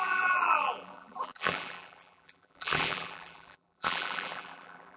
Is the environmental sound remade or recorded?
remade